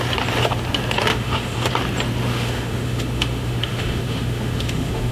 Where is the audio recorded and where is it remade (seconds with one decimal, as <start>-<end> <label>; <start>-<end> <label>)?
0.0-1.1 recorded; 1.1-1.7 remade; 1.7-2.3 recorded; 2.3-5.1 remade